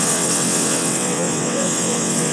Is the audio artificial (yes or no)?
yes